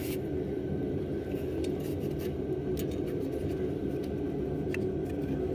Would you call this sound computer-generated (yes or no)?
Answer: no